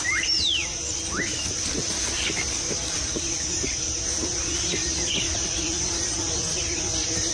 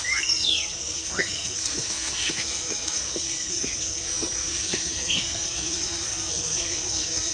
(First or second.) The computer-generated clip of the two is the second